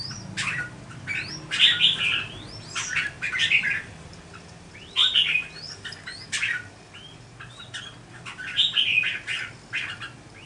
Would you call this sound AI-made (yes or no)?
no